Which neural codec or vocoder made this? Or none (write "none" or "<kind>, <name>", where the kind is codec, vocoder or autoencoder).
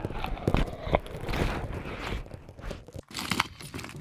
none